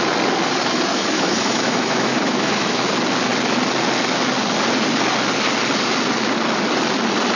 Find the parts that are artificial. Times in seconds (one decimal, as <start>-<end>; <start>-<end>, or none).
0.9-2.8